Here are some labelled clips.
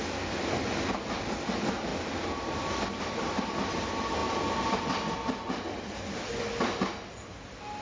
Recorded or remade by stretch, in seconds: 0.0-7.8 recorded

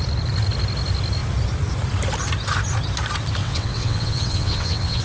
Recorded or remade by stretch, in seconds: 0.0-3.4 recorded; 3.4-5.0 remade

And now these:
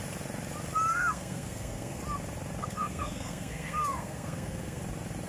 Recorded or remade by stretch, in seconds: 0.0-0.9 recorded; 0.9-2.0 remade; 2.0-2.6 recorded; 2.6-4.8 remade; 4.8-5.3 recorded

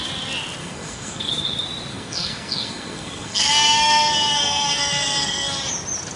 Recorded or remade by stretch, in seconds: 0.0-0.6 recorded; 0.6-1.3 remade; 1.3-1.9 recorded; 1.9-5.6 remade; 5.6-6.2 recorded